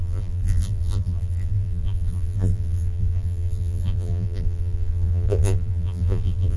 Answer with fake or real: fake